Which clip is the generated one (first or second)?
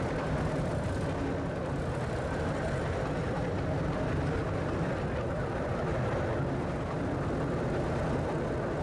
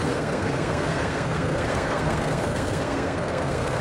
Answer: second